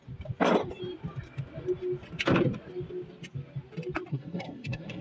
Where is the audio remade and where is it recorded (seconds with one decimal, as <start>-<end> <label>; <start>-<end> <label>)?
0.0-4.1 recorded; 4.1-5.0 remade